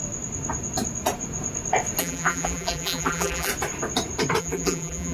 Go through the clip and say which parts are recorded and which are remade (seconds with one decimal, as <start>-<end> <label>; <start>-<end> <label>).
0.0-2.0 recorded; 2.0-3.5 remade; 3.5-4.4 recorded; 4.4-5.1 remade